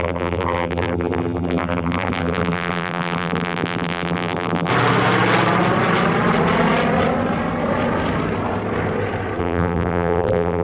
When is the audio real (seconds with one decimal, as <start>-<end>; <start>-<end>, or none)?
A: 4.7-9.4